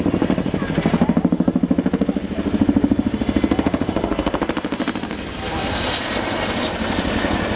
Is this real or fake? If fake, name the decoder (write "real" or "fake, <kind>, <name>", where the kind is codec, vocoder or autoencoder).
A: real